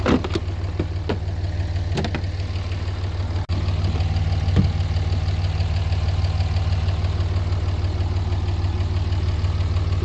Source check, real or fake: real